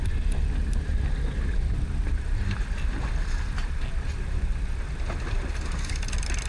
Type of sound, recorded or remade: recorded